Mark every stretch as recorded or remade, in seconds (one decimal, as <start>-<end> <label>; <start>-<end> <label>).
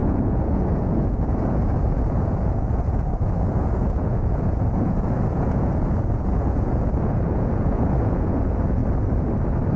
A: 0.0-8.8 remade; 8.8-9.8 recorded